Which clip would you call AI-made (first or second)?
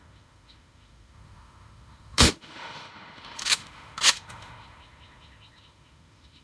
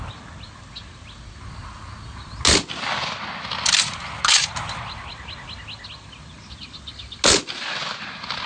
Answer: first